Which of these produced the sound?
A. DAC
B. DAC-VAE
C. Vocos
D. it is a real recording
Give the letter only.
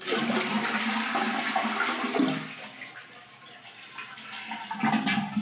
D